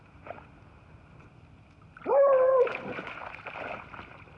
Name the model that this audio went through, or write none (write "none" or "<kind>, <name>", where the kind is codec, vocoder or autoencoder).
none